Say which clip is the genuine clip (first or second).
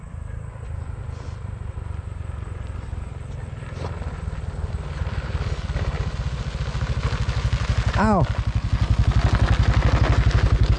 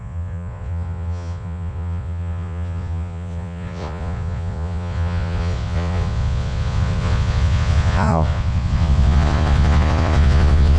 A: first